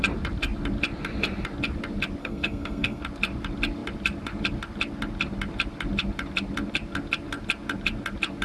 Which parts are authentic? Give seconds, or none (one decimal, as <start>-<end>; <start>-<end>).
0.0-2.2; 3.0-8.4